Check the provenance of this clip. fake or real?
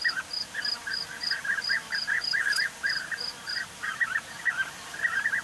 real